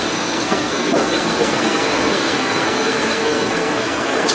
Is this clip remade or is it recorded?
remade